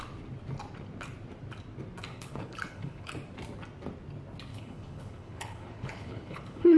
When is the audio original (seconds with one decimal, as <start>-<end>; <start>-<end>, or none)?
0.0-2.1; 3.1-4.5